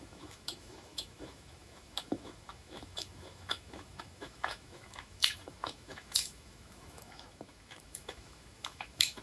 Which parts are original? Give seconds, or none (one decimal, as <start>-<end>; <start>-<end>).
none